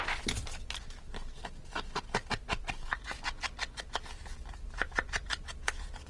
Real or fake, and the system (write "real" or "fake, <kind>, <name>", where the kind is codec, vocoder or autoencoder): real